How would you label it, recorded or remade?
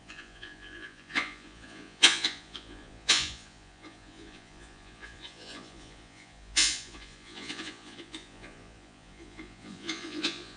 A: remade